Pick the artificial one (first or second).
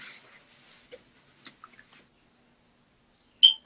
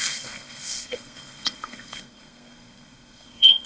second